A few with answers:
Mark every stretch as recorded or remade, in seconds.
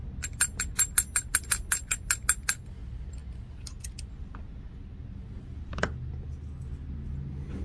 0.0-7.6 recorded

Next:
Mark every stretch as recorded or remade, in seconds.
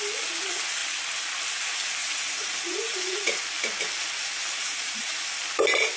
0.0-2.0 recorded; 2.0-3.4 remade; 3.4-4.6 recorded; 4.6-5.1 remade; 5.1-6.0 recorded